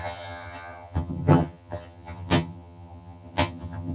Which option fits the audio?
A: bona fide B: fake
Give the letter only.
B